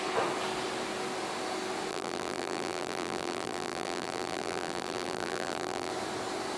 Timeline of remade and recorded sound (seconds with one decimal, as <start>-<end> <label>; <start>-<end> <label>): 0.0-1.9 recorded; 1.9-5.9 remade; 5.9-6.6 recorded